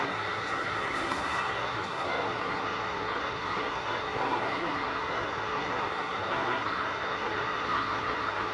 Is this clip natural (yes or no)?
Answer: no